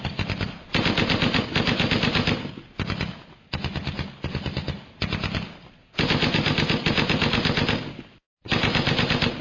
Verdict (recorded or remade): recorded